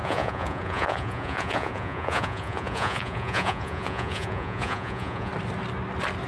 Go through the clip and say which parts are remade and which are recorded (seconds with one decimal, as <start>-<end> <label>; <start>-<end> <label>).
0.0-5.3 remade; 5.3-6.3 recorded